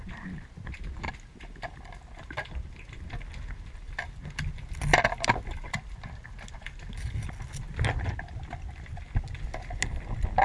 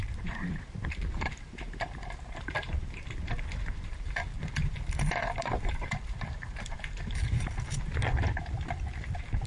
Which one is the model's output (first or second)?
second